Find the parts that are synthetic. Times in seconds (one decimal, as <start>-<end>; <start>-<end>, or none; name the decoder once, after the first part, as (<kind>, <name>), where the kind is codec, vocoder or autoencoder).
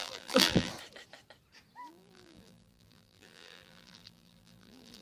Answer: 0.0-0.7 (vocoder, BigVGAN v2); 1.9-5.0